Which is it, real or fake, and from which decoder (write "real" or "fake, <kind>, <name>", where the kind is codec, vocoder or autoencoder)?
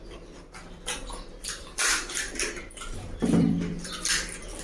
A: fake, vocoder, BigVGAN v2